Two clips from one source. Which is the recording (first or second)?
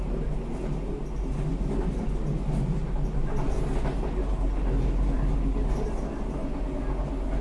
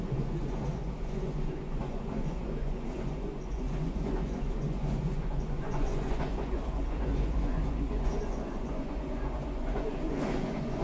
first